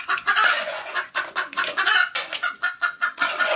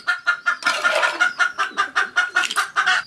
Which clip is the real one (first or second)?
second